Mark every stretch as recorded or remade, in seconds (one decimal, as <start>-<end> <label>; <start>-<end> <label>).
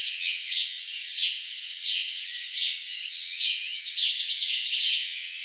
0.0-5.4 remade